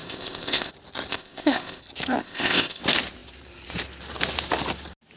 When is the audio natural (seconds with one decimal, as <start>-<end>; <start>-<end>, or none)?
0.7-1.1; 1.8-2.2; 2.8-5.2

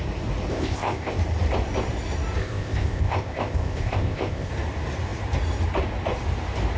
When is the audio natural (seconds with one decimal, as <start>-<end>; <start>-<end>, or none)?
0.0-0.5; 1.1-2.4; 4.5-6.8

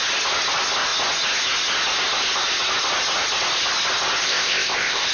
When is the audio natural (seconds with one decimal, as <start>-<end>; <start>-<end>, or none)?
0.0-4.2

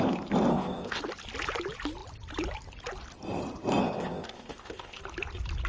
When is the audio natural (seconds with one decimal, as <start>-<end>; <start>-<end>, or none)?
0.0-0.5; 1.0-3.8; 5.0-5.7

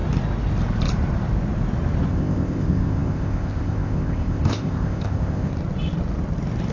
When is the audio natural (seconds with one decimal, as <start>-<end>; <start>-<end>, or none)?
0.0-2.1; 5.5-6.7

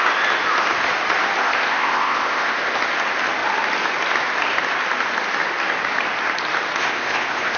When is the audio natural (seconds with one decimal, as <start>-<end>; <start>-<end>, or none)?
0.0-1.4; 2.8-6.8